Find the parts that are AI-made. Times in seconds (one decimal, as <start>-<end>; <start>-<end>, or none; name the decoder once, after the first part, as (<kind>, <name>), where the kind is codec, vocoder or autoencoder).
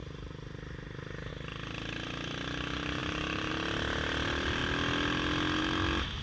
none